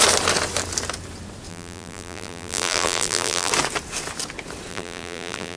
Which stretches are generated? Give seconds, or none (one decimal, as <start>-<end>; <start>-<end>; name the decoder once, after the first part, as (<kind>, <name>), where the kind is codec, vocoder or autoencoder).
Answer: 1.5-3.5 (vocoder, BigVGAN v2); 4.7-5.6